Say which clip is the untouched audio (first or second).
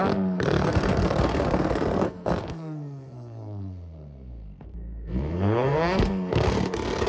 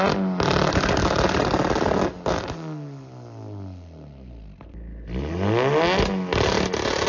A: second